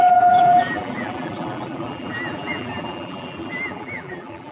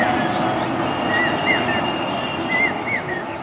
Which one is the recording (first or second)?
second